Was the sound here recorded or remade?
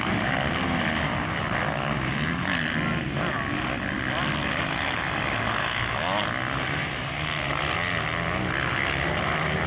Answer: recorded